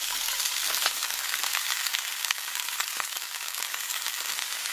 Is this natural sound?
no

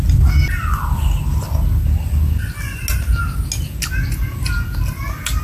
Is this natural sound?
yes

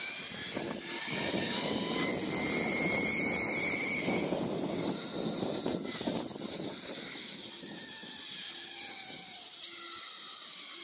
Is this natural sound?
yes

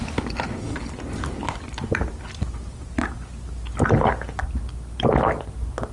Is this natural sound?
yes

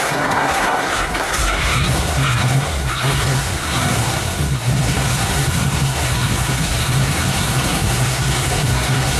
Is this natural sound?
no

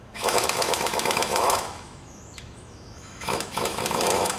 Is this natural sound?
no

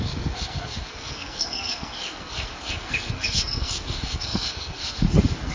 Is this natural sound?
no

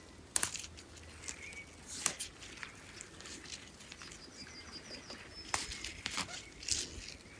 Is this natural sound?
yes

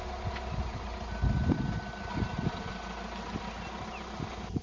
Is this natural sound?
yes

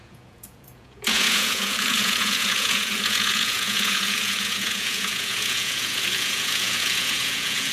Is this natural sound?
no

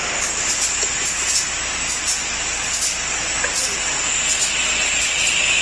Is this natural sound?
yes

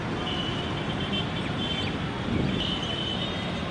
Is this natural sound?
yes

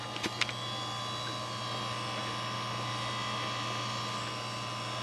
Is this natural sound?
yes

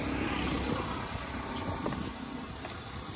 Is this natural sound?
yes